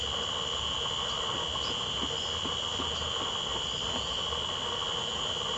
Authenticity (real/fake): real